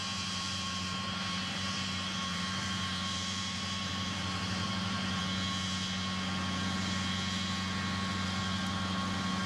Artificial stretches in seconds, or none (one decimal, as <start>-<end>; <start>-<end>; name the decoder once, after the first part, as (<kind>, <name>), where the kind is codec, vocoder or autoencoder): 0.0-5.2 (vocoder, BigVGAN v2)